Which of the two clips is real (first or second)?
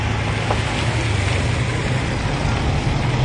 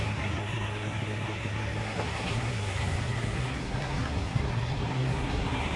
first